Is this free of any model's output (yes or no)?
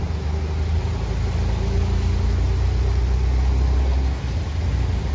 yes